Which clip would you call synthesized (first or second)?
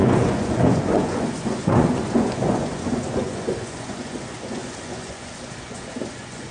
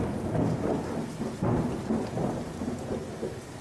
first